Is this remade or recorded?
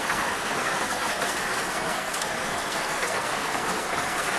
remade